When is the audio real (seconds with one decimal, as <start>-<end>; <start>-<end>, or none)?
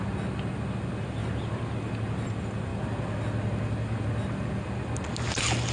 0.0-5.7